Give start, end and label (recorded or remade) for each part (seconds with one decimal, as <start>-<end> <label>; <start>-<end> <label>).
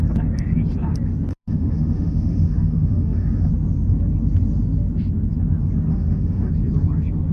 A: 0.0-1.3 recorded; 1.3-3.5 remade; 3.5-5.9 recorded; 5.9-6.5 remade; 6.5-7.3 recorded